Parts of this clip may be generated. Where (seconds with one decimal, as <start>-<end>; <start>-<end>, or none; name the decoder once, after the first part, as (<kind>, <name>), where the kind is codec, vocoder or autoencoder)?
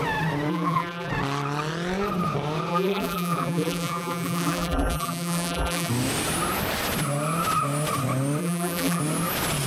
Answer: 0.5-1.1 (vocoder, BigVGAN v2); 2.7-5.9; 8.4-9.0